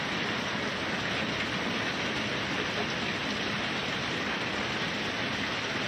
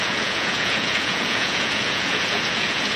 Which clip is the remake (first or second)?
second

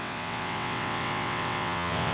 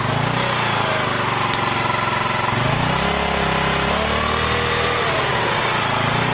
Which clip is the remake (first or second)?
first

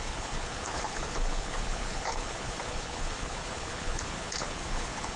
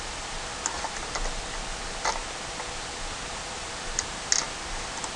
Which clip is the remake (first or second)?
first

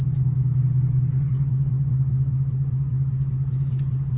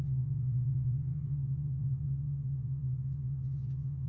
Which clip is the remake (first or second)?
second